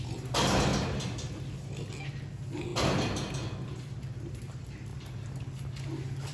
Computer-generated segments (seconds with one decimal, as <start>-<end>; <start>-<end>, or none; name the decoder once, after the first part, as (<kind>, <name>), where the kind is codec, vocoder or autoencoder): none